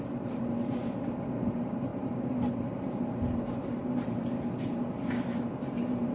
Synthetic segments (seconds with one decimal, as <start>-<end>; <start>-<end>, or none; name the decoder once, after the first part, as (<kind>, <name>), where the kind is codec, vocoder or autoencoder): 0.0-6.1 (vocoder, BigVGAN v2)